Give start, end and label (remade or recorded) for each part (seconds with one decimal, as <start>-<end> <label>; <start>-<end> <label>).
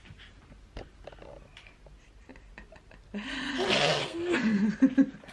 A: 0.0-3.9 recorded; 3.9-4.6 remade; 4.6-5.3 recorded